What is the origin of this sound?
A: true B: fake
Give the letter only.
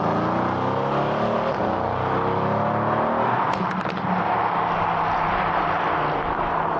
A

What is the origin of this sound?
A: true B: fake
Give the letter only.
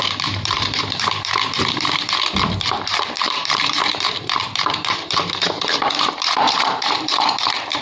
B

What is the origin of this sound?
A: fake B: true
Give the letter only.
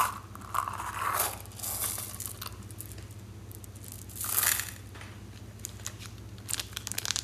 B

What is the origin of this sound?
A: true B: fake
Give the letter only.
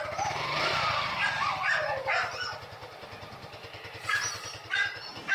A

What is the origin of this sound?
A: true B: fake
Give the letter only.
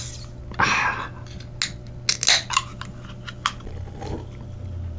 A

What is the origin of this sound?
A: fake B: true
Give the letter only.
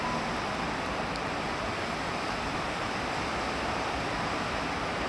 B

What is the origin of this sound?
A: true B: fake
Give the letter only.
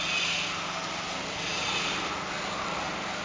A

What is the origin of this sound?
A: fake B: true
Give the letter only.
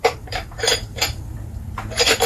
A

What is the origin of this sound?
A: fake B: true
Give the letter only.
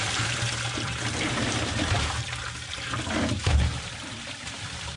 A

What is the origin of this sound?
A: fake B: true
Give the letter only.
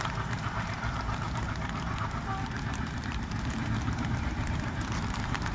A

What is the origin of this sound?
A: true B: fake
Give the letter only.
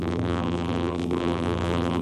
B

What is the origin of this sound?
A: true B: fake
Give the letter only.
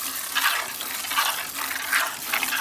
A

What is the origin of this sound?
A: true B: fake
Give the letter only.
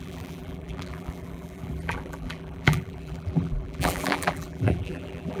B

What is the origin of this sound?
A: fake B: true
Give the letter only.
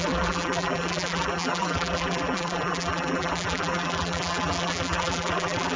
A